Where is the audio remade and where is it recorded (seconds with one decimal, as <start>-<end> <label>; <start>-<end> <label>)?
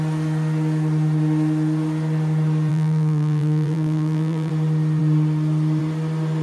0.0-2.7 recorded; 2.7-4.5 remade; 4.5-6.4 recorded